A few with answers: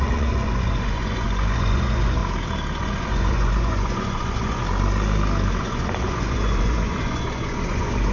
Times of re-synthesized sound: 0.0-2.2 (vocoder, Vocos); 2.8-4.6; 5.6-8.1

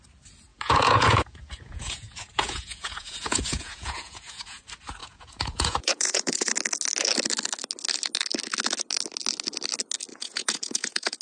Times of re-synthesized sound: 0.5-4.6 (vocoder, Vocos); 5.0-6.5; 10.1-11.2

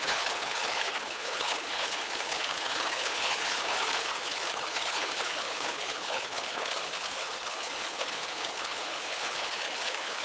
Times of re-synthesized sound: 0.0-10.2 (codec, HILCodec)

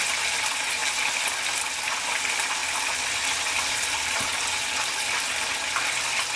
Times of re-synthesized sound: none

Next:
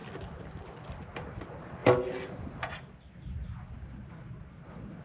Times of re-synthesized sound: none

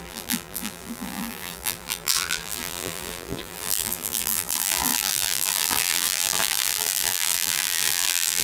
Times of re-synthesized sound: 0.0-8.4 (vocoder, BigVGAN v2)

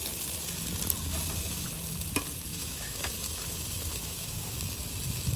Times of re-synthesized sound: 2.5-4.6 (autoencoder, DAC-VAE)

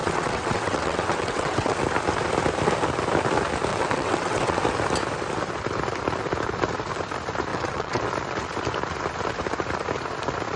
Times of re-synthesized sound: 0.0-1.8 (vocoder, WaveNeXt); 3.7-4.6; 7.5-8.0